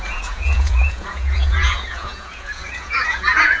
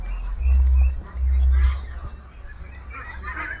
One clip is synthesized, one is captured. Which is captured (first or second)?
second